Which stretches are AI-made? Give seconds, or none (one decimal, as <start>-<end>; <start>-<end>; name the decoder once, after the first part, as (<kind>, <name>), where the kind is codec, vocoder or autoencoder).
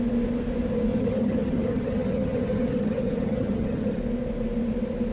0.9-4.0 (vocoder, HiFi-GAN)